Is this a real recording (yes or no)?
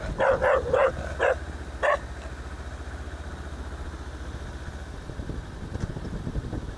yes